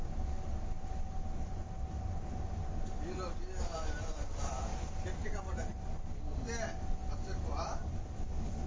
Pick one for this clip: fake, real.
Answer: real